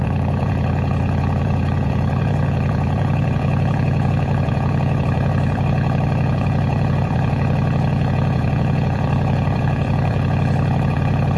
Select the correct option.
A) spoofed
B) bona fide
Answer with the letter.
A